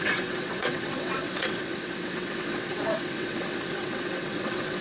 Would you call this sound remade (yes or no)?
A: yes